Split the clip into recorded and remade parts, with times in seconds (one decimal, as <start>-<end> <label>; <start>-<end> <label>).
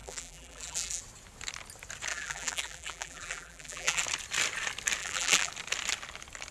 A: 0.0-1.0 remade; 1.0-2.1 recorded; 2.1-4.0 remade; 4.0-5.0 recorded; 5.0-5.5 remade; 5.5-6.5 recorded